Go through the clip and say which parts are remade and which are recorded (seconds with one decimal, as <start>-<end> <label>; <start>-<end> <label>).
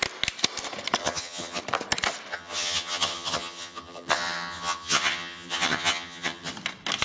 0.0-1.0 recorded; 1.0-1.6 remade; 1.6-2.3 recorded; 2.3-6.5 remade; 6.5-7.0 recorded